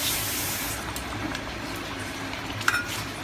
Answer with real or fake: fake